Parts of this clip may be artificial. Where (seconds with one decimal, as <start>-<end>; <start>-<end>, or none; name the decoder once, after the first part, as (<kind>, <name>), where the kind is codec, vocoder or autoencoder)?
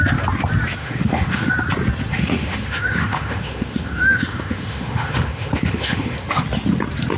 0.8-1.5 (autoencoder, DAC-VAE); 2.1-6.4